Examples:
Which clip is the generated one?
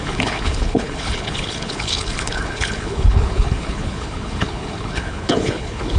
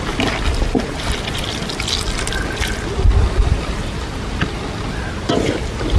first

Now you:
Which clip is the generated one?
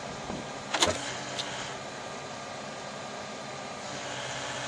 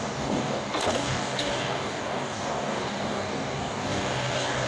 second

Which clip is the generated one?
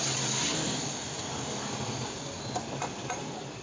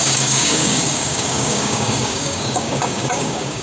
second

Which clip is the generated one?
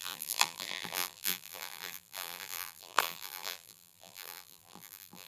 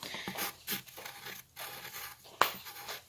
first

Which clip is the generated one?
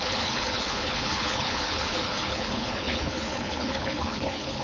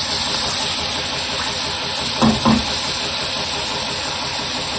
first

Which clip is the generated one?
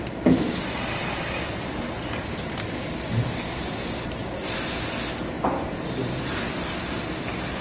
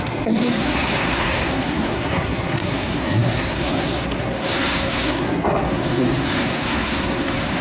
second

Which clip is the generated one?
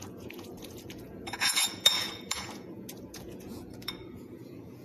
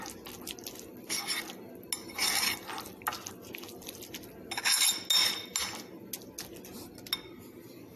first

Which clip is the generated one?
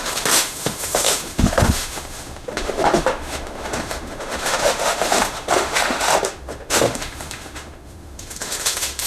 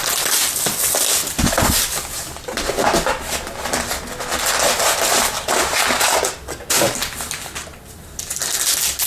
first